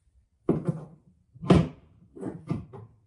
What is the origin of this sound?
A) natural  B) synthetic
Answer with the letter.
A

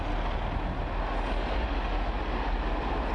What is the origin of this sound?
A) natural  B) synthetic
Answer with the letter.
A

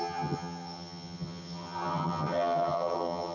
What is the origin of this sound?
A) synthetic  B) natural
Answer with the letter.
A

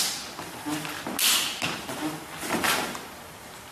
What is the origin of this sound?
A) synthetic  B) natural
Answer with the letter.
B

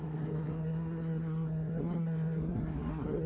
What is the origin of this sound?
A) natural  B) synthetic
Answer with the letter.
B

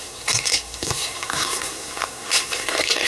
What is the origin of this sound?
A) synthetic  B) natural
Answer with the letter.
A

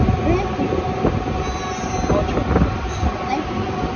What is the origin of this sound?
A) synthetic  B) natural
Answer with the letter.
B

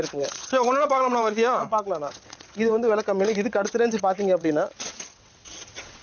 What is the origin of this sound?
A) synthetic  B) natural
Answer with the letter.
A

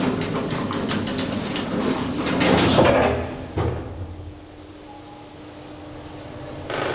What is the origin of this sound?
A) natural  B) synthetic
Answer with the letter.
A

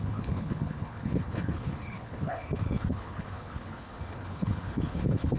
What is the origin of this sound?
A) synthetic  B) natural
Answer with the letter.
A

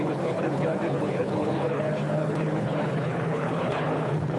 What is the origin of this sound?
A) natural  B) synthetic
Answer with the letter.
B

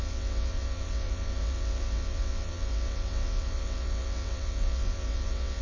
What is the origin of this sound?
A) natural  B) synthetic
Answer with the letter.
B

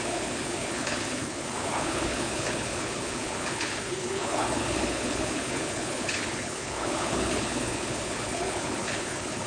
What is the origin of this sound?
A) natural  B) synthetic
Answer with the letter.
B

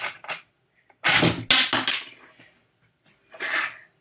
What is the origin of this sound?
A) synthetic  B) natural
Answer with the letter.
B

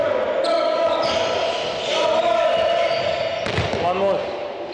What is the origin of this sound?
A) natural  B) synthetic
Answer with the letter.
A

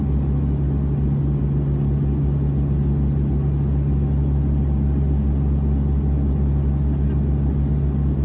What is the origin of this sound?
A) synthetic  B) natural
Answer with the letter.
B